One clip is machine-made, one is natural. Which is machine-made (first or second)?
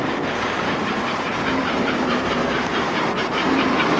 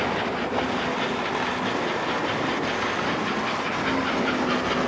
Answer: first